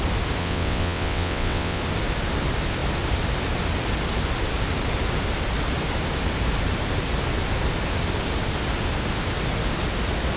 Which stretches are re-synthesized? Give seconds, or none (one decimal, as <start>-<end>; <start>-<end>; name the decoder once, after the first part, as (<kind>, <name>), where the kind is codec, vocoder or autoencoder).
0.4-1.8 (vocoder, WaveNeXt)